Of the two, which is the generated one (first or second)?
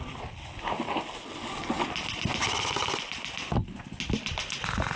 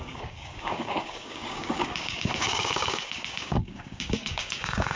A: second